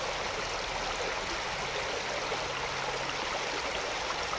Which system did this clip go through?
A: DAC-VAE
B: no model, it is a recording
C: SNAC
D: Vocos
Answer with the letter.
B